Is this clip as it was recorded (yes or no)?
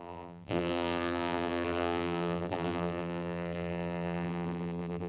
no